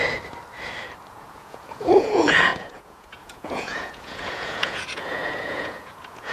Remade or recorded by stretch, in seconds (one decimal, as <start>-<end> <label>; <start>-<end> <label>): 0.0-1.1 recorded; 1.1-6.3 remade